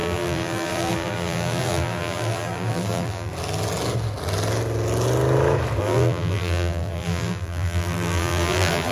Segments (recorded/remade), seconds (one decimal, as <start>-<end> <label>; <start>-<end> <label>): 0.0-3.3 remade; 3.3-5.8 recorded; 5.8-8.9 remade